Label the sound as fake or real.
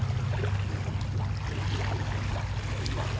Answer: real